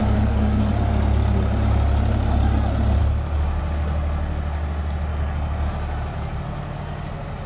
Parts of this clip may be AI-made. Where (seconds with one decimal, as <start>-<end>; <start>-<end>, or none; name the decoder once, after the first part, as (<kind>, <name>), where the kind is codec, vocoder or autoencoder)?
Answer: 0.0-0.7 (codec, DAC); 5.1-5.7